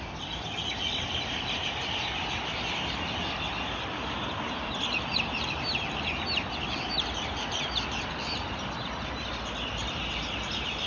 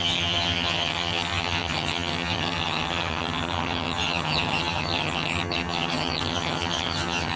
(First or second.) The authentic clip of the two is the first